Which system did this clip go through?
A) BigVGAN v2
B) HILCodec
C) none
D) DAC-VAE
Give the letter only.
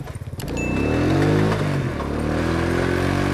C